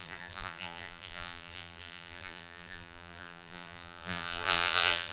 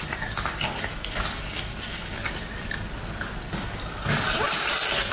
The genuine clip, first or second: second